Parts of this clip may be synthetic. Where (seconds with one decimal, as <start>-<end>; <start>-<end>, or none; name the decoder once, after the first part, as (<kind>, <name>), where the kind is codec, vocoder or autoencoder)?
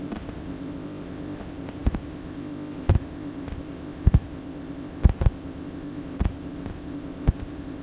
0.0-7.8 (codec, ZipCodec)